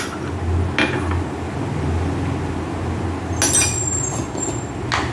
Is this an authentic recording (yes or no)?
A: yes